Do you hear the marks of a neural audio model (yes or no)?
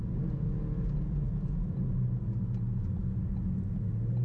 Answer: no